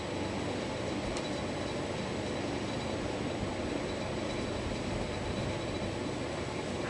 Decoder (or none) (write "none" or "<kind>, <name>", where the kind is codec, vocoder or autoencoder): none